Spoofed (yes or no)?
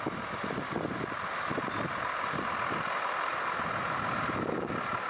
no